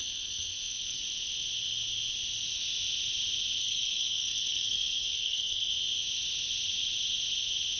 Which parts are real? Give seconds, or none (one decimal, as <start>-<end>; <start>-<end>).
1.0-3.6; 5.7-7.8